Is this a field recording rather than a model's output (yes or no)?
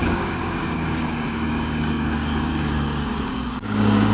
no